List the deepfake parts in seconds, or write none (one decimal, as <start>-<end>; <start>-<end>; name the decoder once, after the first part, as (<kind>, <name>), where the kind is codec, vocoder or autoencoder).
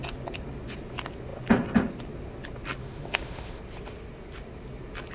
2.8-3.6 (autoencoder, DAC-VAE)